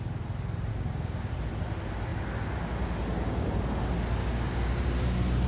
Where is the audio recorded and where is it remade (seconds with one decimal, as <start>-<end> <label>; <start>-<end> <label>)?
0.0-0.7 recorded; 0.7-1.3 remade; 1.3-4.2 recorded; 4.2-4.7 remade; 4.7-5.5 recorded